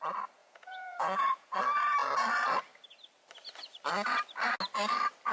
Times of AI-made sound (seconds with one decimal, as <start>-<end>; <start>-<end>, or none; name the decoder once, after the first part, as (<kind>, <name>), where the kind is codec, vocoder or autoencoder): 0.4-1.6 (vocoder, Vocos)